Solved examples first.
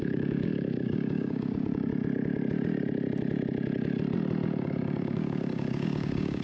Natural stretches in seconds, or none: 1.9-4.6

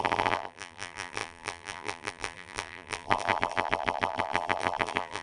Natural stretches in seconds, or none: none

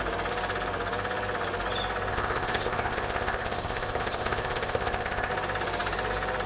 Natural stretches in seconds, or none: 0.0-2.1; 5.3-6.5

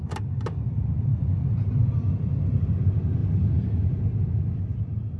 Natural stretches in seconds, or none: 0.0-1.1; 1.7-3.2; 3.8-5.2

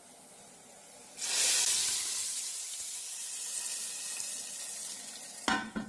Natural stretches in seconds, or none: 0.0-2.2; 3.2-5.9

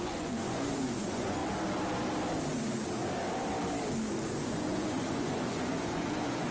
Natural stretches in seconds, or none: 1.4-4.3

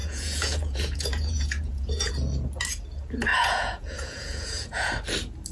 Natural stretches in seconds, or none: 2.1-3.3; 4.9-5.5

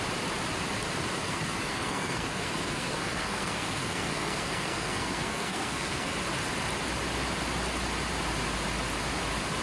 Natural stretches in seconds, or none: 0.0-1.2; 6.1-9.6